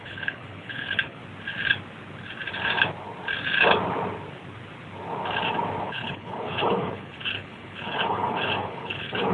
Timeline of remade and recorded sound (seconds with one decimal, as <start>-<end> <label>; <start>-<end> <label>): 0.0-1.2 remade; 1.2-5.8 recorded; 5.8-9.3 remade